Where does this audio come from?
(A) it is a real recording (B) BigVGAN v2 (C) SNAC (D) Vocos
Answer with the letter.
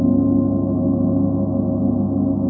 A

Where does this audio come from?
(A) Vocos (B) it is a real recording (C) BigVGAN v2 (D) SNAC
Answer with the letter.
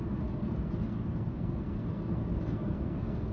D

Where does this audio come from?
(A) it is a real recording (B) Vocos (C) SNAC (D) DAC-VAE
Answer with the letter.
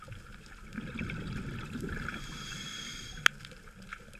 A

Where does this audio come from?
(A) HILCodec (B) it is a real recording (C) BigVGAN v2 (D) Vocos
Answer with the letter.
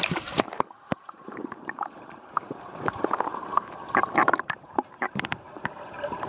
C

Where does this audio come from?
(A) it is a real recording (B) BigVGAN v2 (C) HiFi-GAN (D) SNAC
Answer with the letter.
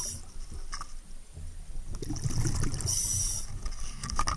A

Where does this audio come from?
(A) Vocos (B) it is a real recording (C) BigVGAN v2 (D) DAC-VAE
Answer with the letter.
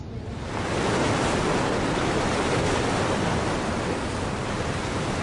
B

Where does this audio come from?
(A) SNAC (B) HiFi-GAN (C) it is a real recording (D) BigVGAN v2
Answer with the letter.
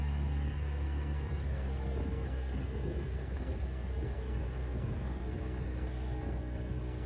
A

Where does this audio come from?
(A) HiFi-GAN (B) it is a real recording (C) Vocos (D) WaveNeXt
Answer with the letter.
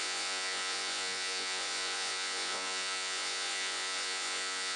C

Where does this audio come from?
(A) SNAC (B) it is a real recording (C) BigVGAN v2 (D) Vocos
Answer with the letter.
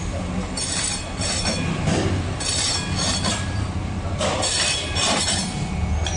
C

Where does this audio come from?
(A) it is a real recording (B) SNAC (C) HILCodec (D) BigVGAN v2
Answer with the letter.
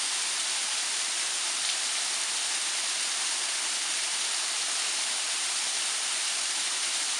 D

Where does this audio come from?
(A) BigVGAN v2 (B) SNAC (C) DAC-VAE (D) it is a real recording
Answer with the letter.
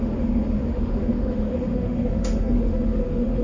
C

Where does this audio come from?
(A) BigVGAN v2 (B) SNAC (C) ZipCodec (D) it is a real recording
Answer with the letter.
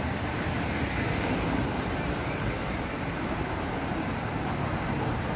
A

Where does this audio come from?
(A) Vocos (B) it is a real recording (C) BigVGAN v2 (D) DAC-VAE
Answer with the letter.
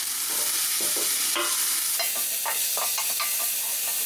B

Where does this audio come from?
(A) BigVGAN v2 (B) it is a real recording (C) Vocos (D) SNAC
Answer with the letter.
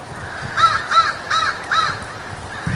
B